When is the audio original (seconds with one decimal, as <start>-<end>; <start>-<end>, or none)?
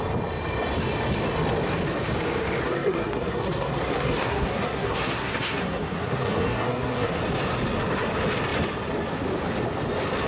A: 0.0-2.6; 7.2-10.3